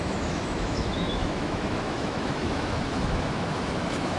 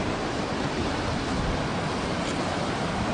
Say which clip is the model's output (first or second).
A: first